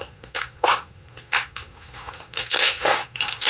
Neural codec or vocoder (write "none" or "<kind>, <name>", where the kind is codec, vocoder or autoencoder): codec, SNAC